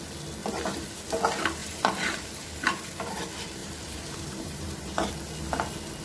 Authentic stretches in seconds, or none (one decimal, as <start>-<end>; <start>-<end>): 0.0-0.4; 1.0-1.6; 3.2-3.6; 5.1-6.0